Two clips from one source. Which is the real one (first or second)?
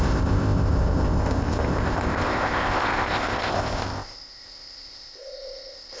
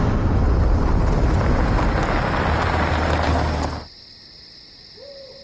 second